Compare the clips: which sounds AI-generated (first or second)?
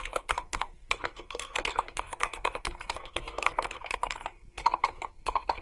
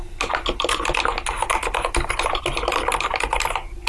first